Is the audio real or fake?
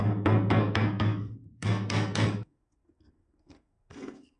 fake